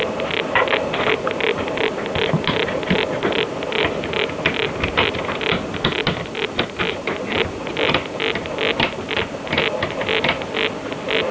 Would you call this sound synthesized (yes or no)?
no